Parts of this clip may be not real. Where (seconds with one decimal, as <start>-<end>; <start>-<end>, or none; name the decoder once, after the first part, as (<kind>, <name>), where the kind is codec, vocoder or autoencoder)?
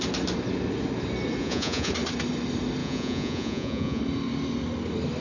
1.4-1.9 (vocoder, Vocos); 2.8-4.0